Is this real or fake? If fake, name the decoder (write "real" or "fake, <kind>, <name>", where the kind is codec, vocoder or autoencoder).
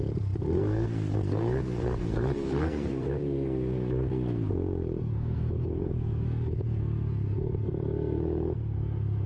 fake, codec, SNAC